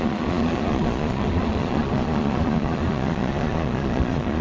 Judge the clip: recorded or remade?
remade